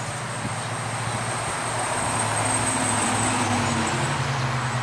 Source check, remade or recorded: recorded